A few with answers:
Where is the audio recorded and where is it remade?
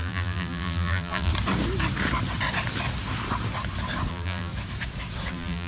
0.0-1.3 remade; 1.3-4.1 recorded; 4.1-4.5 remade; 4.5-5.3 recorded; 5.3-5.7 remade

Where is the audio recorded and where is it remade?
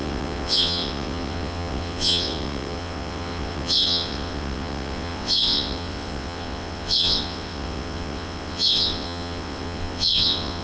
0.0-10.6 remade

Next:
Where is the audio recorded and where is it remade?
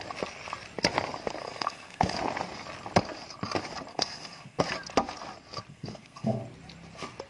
0.0-1.4 recorded; 1.4-2.2 remade; 2.2-3.9 recorded; 3.9-4.6 remade; 4.6-5.7 recorded; 5.7-6.4 remade; 6.4-7.3 recorded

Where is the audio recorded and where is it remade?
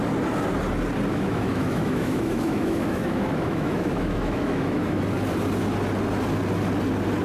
0.0-1.1 recorded; 1.1-5.0 remade; 5.0-7.2 recorded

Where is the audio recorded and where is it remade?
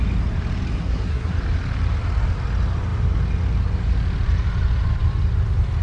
0.0-0.8 recorded; 0.8-1.3 remade; 1.3-5.8 recorded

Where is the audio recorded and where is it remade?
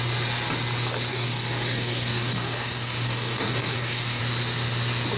0.0-1.1 recorded; 1.1-4.2 remade; 4.2-5.2 recorded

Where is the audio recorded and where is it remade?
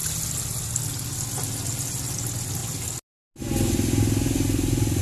0.0-5.0 recorded